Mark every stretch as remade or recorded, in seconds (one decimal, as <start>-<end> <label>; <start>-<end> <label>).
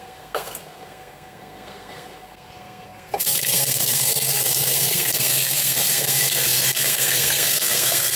0.0-8.2 remade